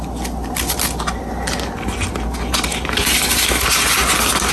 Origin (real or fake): real